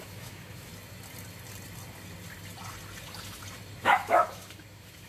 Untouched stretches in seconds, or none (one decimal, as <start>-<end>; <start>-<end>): 0.7-3.8